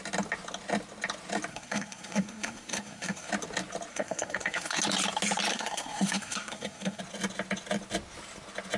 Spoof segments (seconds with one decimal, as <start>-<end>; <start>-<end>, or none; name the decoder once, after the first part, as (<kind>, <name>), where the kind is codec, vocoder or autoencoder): 1.5-3.3 (codec, SNAC); 3.9-4.8; 5.5-7.0